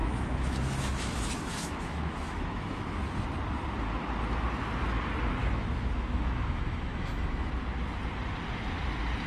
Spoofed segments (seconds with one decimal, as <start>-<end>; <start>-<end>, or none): 0.0-3.0; 5.4-7.5